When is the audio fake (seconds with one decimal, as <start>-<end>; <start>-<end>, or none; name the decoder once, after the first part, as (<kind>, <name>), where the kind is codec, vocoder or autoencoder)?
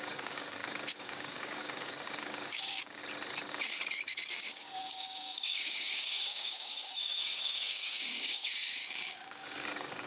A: 0.0-3.0 (codec, DAC); 3.5-10.1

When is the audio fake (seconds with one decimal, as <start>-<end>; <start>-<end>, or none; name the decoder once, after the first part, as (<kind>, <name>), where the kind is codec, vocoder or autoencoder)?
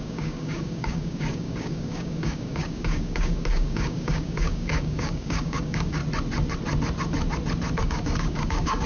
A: 0.0-6.0 (codec, DAC); 7.8-8.9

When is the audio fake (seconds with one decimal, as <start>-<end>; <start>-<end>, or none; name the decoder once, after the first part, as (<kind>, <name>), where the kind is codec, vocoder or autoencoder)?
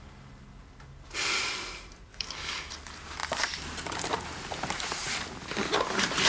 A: 2.1-2.7 (codec, DAC)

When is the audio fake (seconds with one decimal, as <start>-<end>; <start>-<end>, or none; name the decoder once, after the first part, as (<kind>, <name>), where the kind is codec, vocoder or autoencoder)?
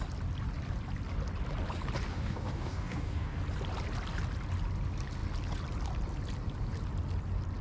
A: 2.1-3.4 (codec, DAC)